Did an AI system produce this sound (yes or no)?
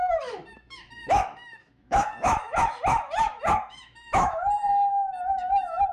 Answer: yes